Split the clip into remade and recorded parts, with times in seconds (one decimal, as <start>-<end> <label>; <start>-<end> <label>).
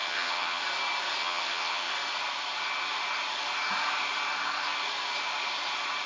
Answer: 0.0-0.6 remade; 0.6-1.2 recorded; 1.2-1.9 remade; 1.9-6.1 recorded